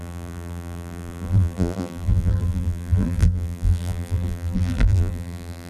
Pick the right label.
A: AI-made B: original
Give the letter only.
A